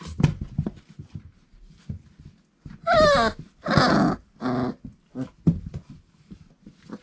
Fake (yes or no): no